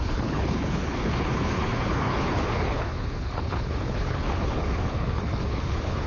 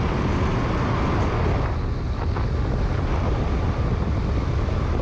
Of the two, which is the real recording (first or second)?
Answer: second